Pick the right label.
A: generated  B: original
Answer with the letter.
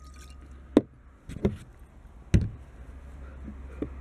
B